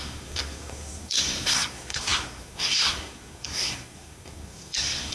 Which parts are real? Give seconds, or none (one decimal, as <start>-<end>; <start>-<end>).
none